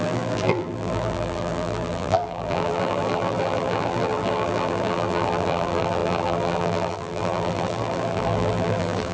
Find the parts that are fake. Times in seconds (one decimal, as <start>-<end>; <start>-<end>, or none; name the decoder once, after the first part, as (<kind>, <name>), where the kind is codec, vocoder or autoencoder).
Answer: 0.0-9.1 (vocoder, BigVGAN v2)